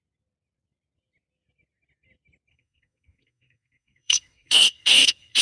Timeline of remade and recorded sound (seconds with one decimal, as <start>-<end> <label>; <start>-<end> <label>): 0.0-2.5 recorded; 2.5-5.4 remade